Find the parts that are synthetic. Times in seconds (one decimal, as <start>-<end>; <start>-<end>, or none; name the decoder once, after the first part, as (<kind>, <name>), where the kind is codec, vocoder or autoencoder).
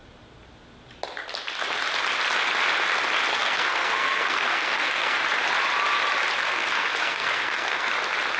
3.3-5.2 (codec, SNAC); 6.4-7.9